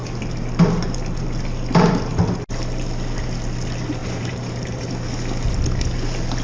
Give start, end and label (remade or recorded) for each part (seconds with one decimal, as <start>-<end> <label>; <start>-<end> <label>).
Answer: 0.0-4.0 recorded; 4.0-4.9 remade; 4.9-6.4 recorded